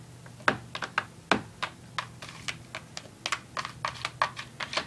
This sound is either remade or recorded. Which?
recorded